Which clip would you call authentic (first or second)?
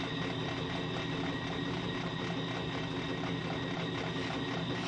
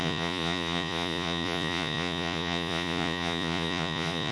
first